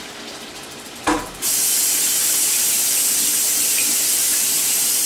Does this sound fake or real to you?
fake